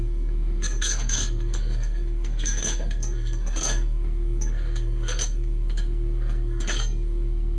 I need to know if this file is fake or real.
fake